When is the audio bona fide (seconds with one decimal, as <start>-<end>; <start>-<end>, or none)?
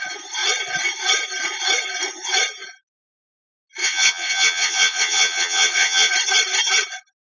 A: 0.0-3.8; 6.1-7.3